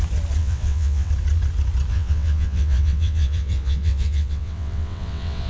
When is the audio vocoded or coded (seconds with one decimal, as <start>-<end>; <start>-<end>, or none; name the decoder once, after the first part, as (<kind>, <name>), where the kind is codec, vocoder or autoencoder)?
0.4-1.1 (vocoder, WaveNeXt); 1.9-5.5

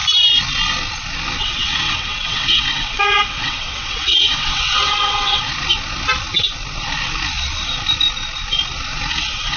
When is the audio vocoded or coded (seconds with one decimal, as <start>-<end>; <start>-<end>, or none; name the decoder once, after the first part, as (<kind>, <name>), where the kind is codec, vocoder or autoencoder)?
1.4-5.5 (vocoder, WaveNeXt); 9.1-9.6

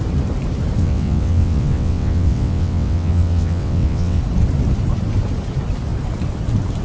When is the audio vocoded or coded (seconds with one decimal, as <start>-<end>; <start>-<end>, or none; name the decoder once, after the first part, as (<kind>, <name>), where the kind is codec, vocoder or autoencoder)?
0.8-4.2 (vocoder, WaveNeXt)

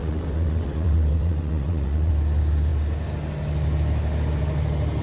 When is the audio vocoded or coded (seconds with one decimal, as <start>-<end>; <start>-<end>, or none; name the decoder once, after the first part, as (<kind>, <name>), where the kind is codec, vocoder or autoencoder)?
0.0-2.1 (vocoder, WaveNeXt)

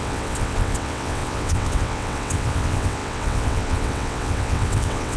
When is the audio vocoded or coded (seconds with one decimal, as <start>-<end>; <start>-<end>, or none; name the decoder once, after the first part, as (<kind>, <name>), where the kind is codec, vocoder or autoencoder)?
0.0-5.2 (vocoder, WaveNeXt)